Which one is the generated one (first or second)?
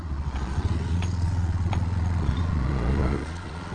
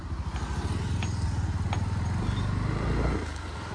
first